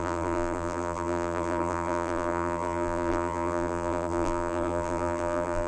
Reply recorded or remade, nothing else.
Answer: remade